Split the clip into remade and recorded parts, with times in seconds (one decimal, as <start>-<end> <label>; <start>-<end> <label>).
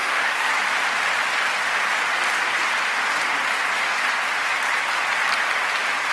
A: 0.0-0.5 remade; 0.5-6.1 recorded